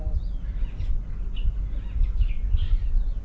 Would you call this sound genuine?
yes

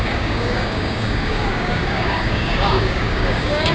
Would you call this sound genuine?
no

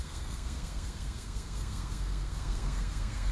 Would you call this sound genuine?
no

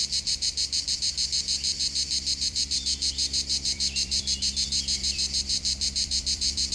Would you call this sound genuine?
no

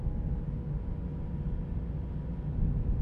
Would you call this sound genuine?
yes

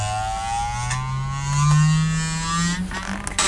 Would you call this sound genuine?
yes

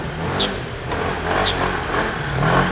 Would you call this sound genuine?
yes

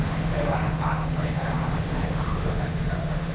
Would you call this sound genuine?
no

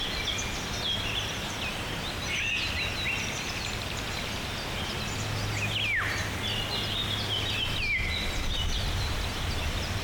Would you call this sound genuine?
yes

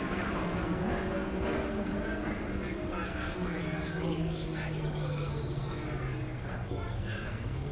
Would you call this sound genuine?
no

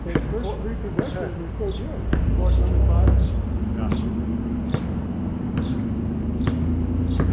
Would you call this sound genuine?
yes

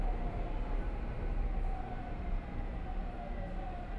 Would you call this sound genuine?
yes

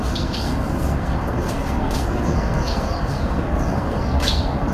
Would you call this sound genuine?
no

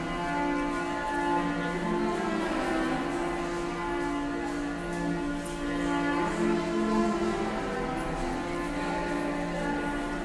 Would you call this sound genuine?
yes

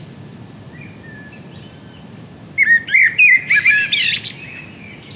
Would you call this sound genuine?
yes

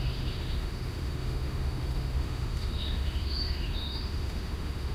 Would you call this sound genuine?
no